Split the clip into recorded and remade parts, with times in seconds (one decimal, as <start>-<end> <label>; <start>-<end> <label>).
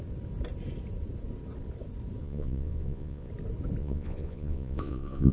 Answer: 0.0-2.2 recorded; 2.2-3.3 remade; 3.3-3.8 recorded; 3.8-5.3 remade